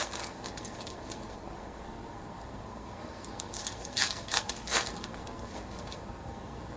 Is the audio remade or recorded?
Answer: remade